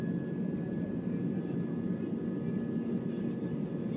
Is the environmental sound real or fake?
real